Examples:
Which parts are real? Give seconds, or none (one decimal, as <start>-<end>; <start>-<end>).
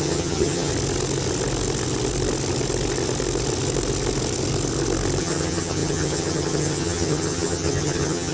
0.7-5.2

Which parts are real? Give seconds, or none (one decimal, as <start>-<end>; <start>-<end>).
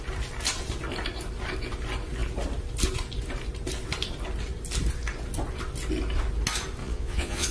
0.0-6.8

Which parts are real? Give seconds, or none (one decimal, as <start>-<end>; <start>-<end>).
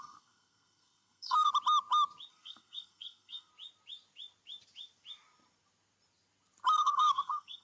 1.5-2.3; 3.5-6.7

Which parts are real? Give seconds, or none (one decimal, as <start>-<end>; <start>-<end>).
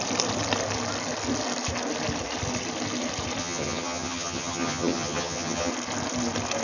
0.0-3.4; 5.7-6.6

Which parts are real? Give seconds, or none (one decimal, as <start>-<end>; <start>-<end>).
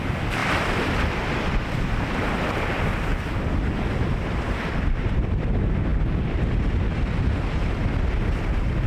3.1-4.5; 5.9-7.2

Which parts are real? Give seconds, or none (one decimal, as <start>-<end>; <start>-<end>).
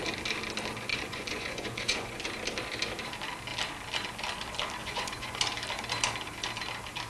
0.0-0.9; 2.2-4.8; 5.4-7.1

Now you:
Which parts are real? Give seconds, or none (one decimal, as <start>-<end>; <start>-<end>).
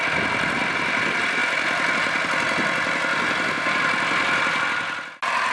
0.0-5.5